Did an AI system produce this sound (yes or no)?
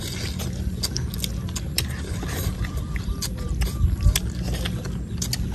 no